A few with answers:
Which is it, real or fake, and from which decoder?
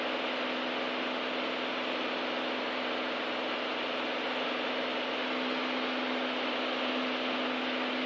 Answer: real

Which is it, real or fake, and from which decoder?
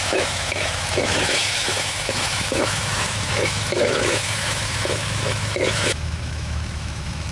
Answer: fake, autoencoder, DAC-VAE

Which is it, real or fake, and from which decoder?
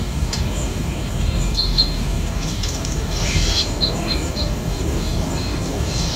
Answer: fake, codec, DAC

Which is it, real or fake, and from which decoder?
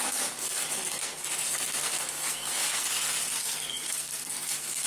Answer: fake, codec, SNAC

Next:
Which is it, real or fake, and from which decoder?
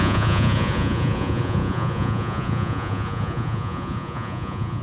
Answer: fake, vocoder, Vocos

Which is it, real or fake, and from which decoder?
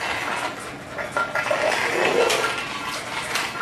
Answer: real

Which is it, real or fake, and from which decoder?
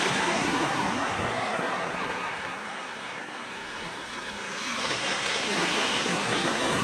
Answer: fake, codec, SNAC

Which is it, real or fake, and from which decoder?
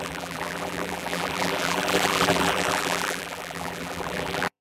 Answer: fake, vocoder, BigVGAN v2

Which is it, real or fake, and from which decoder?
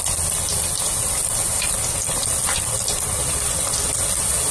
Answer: real